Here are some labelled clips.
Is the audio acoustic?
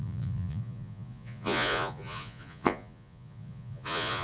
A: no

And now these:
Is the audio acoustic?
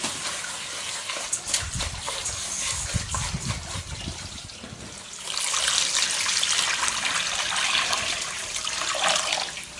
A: no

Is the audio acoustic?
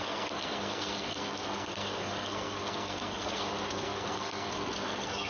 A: no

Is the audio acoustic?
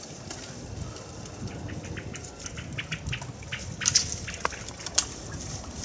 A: yes